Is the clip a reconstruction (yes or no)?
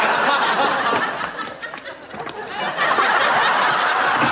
no